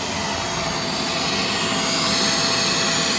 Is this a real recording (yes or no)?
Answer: yes